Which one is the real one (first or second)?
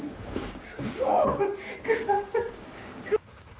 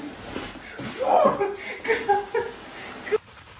second